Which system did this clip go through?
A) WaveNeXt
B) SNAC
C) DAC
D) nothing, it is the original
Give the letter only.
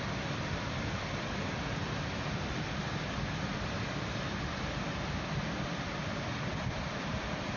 D